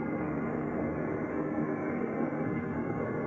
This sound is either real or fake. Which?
fake